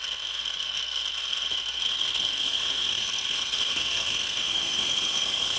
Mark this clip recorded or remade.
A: remade